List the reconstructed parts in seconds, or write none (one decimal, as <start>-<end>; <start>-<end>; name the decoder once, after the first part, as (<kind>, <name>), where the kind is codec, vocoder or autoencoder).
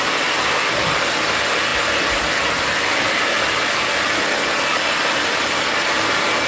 none